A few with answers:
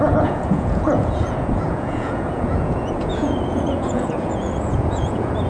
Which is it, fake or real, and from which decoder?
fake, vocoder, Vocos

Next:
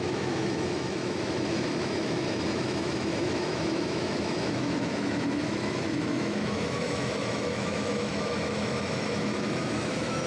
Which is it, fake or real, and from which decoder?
fake, autoencoder, DAC-VAE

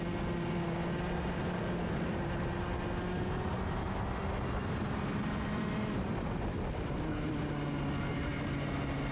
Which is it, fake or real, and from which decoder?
real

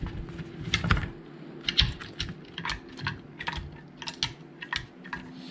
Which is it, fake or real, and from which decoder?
real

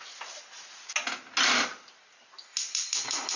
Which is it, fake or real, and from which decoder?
real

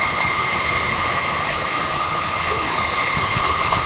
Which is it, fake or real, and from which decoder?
fake, codec, HILCodec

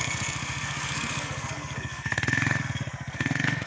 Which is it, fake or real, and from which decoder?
fake, codec, SNAC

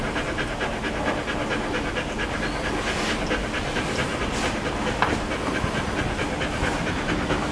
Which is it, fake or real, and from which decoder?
real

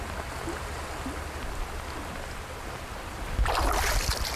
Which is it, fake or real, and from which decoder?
real